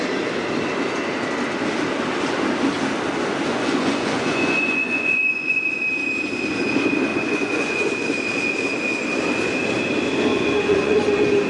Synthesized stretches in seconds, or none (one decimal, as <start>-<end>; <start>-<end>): 3.5-5.7; 7.1-7.9; 10.3-11.0